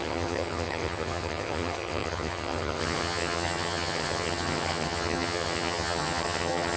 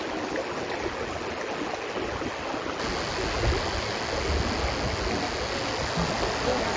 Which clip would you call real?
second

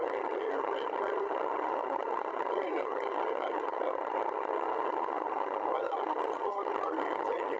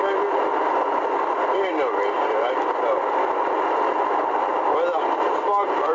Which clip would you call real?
second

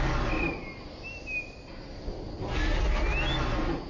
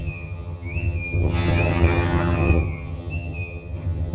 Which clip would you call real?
first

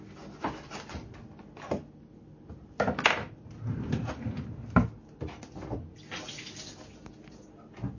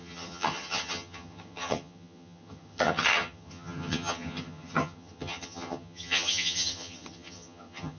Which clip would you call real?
first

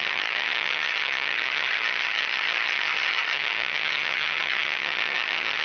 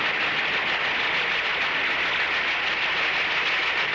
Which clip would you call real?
second